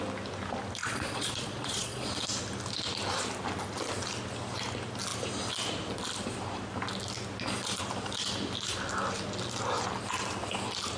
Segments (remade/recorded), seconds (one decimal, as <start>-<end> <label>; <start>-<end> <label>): 0.0-0.8 recorded; 0.8-2.1 remade; 2.1-11.0 recorded